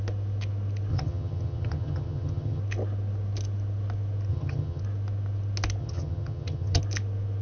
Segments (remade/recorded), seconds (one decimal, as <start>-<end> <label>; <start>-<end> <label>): 0.0-0.9 recorded; 0.9-2.6 remade; 2.6-4.3 recorded; 4.3-4.8 remade; 4.8-5.8 recorded; 5.8-6.8 remade; 6.8-7.4 recorded